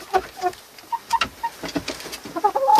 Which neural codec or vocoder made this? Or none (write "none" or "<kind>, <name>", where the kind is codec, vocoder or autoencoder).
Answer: none